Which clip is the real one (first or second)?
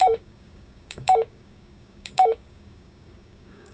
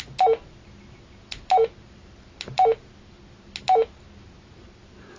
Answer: second